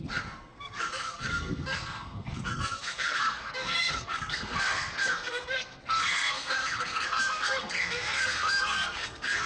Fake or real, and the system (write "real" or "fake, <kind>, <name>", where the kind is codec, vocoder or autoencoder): fake, codec, SNAC